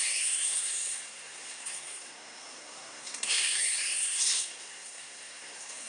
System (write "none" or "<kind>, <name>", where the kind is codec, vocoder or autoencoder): codec, SNAC